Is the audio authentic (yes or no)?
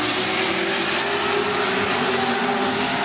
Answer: yes